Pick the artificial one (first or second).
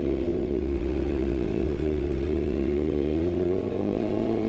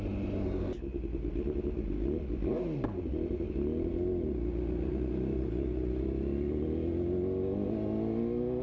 first